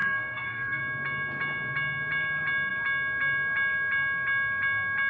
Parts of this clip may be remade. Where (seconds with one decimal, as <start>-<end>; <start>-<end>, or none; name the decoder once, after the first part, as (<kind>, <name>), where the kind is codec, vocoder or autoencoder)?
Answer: 0.0-0.8 (codec, SNAC)

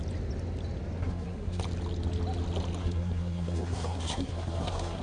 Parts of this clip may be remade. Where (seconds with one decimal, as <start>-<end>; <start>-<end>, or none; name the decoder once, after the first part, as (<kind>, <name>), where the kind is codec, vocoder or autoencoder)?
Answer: 1.0-1.6 (codec, SNAC); 2.8-5.0

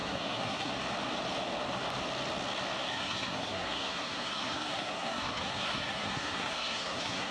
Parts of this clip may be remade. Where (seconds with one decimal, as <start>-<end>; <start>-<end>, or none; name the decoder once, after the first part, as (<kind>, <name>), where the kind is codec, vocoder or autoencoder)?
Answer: 0.0-0.7 (codec, SNAC); 2.9-7.3

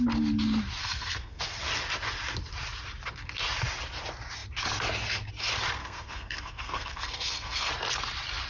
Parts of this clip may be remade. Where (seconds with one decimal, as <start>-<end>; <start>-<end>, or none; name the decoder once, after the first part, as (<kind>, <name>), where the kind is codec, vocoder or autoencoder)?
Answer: 0.8-1.4 (codec, SNAC); 5.8-7.7

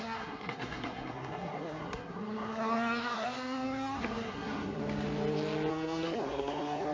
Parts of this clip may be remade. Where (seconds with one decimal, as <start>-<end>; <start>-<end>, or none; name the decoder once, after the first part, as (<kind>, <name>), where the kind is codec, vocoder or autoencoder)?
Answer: 0.0-4.8 (codec, SNAC); 5.7-6.9

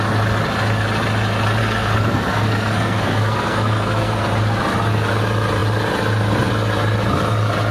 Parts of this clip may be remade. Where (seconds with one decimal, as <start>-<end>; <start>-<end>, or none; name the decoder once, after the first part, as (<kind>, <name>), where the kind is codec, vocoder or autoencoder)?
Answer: 1.6-4.2 (codec, SNAC)

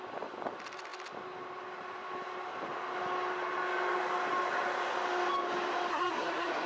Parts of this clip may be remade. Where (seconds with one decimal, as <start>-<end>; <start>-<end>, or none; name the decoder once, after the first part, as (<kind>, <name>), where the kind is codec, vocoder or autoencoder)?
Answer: 5.9-6.7 (codec, SNAC)

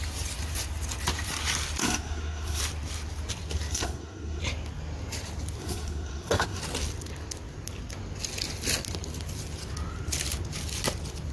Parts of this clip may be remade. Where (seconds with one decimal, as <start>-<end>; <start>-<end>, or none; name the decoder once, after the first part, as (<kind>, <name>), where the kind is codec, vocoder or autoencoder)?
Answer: 1.8-2.6 (codec, SNAC); 3.7-4.4; 5.6-6.6